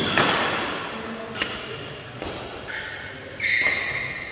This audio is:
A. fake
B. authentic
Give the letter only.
B